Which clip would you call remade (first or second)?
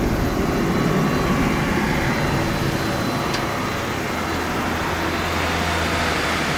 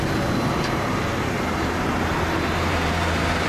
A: second